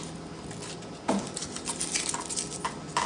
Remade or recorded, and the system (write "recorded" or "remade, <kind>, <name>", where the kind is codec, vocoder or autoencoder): recorded